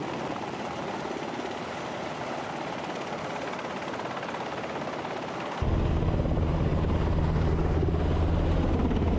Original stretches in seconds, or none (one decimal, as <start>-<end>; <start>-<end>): 0.0-9.2